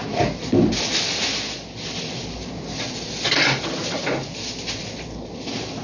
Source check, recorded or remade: recorded